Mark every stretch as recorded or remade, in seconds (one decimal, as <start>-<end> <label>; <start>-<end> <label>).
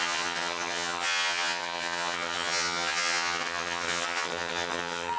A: 0.0-5.2 remade